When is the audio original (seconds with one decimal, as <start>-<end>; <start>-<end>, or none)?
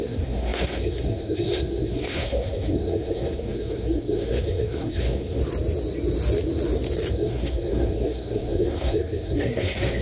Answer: 5.4-7.1